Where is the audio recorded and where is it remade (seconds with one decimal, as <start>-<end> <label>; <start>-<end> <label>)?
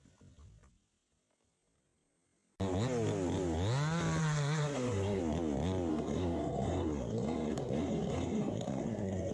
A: 0.0-4.2 recorded; 4.2-5.2 remade; 5.2-5.9 recorded; 5.9-9.3 remade